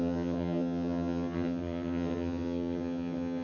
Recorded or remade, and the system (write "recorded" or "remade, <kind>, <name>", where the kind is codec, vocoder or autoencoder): remade, vocoder, HiFi-GAN